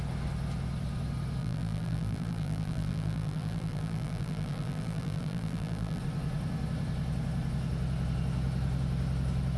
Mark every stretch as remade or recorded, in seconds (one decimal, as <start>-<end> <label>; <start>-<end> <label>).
0.0-1.4 recorded; 1.4-6.0 remade; 6.0-9.6 recorded